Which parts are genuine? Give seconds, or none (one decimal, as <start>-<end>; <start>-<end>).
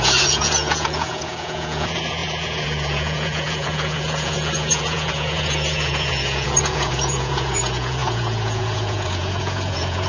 none